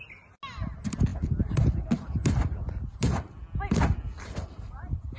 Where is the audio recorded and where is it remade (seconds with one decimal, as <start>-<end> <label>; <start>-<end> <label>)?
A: 0.0-5.2 recorded